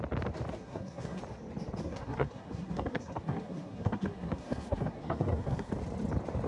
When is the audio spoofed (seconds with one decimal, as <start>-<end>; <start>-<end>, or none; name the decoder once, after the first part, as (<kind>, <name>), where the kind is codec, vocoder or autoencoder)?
0.6-1.2 (codec, SNAC); 1.8-5.7